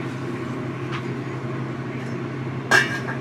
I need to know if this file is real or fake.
real